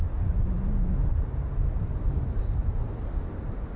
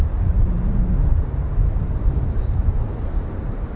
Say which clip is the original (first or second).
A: first